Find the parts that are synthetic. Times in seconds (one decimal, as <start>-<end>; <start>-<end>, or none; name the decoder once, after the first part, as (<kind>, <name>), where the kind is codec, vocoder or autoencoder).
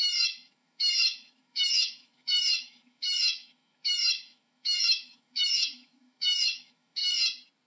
0.0-7.0 (autoencoder, DAC-VAE)